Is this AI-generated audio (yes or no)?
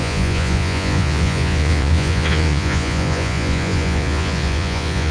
yes